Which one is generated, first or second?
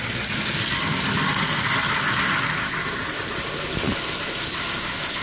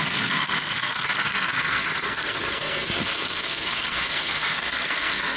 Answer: second